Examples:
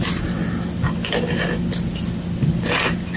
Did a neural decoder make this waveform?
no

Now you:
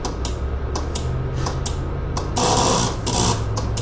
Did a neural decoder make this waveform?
no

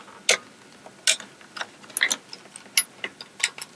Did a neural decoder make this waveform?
no